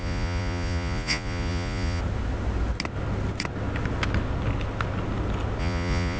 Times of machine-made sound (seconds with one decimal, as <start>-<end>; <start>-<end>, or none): 0.0-2.0; 5.6-6.2